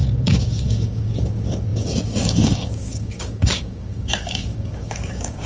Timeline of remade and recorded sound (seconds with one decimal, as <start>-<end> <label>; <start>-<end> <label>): 0.0-5.5 remade